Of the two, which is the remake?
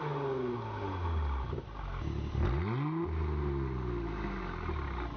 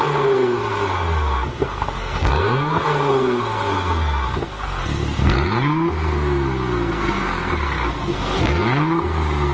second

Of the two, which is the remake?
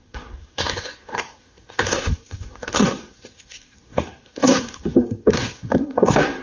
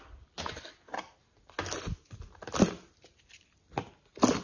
first